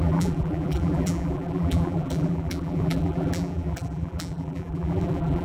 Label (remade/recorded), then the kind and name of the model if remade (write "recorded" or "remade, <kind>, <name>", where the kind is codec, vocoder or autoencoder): remade, vocoder, BigVGAN v2